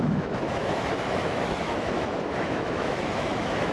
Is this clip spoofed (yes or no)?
yes